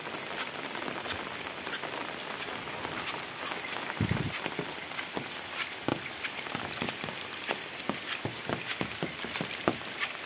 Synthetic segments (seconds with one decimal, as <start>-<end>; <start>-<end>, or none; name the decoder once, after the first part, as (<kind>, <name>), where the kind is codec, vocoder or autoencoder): 5.9-6.9 (vocoder, BigVGAN v2)